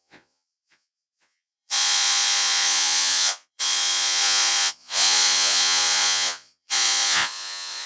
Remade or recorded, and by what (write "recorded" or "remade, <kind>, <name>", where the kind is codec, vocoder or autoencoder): remade, vocoder, Vocos